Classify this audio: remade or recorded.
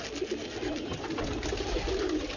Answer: recorded